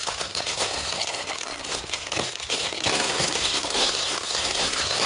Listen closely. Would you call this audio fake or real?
fake